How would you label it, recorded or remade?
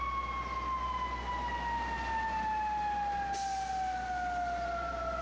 recorded